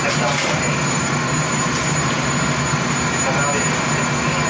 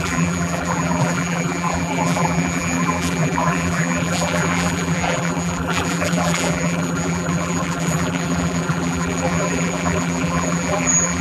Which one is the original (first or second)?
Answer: first